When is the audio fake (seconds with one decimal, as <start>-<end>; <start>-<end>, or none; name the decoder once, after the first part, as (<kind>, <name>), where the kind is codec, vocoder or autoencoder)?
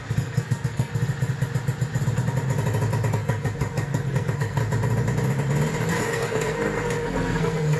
0.0-0.9 (codec, SNAC); 3.1-4.6; 5.9-7.8